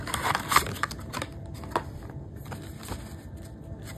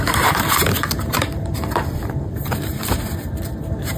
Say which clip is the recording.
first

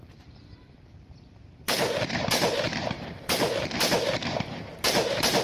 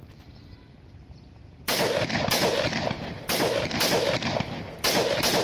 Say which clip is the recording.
second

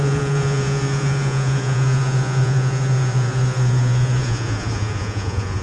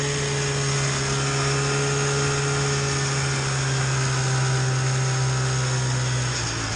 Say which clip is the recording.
second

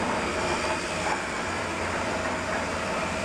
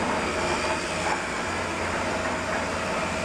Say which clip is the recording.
second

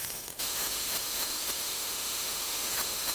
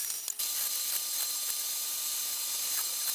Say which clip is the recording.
second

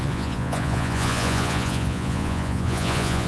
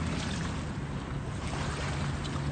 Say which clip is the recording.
second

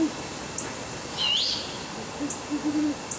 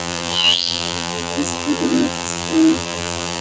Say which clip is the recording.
first